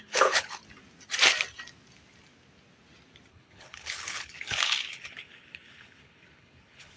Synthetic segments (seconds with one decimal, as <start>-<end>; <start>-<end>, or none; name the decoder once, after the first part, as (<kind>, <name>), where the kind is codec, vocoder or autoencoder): 0.0-0.6 (codec, HILCodec); 3.3-7.0